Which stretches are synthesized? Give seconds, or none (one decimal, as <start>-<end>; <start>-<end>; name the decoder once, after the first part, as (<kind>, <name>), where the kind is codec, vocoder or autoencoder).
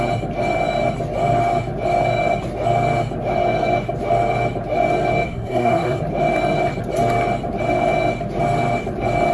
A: 5.3-6.0 (codec, SNAC)